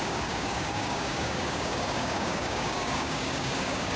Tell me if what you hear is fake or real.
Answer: fake